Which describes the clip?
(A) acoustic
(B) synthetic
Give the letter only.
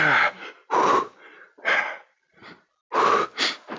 A